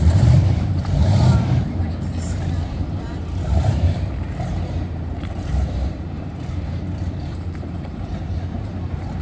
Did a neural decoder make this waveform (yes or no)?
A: yes